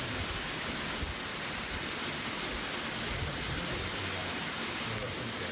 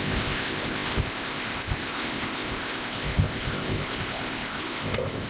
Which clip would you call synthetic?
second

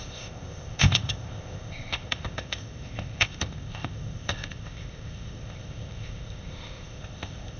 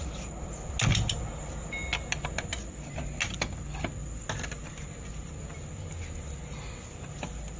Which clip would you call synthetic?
first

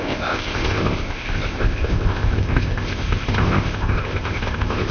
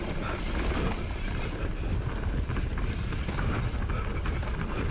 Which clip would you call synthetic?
first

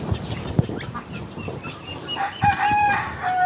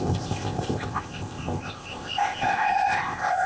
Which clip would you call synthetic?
second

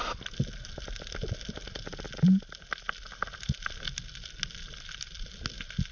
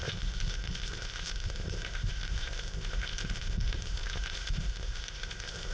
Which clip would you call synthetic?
second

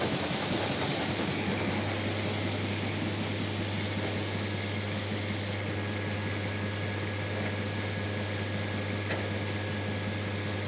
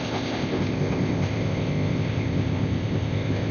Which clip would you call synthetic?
second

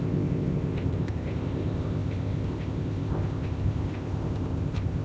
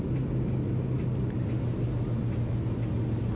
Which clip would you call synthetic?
first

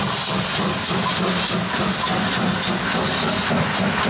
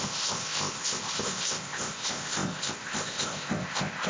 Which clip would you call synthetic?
second